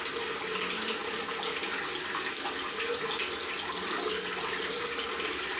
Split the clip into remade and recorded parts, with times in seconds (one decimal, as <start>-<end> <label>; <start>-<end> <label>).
0.0-5.6 recorded